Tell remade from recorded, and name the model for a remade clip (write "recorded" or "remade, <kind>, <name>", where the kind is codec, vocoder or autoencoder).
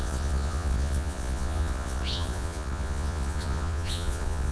remade, vocoder, Vocos